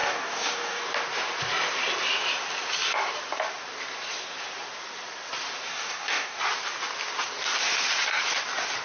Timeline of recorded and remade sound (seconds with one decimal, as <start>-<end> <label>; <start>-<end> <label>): 0.0-0.8 remade; 0.8-5.7 recorded; 5.7-6.4 remade; 6.4-8.8 recorded